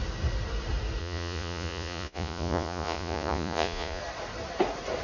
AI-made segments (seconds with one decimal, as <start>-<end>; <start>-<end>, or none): 1.0-4.0